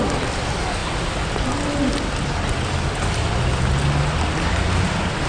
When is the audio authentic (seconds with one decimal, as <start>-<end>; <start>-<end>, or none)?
0.0-5.3